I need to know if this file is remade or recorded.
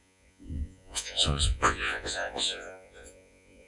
remade